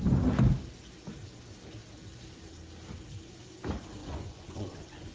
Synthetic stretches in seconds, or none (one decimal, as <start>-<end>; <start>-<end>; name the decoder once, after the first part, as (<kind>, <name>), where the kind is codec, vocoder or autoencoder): 4.0-5.1 (vocoder, Vocos)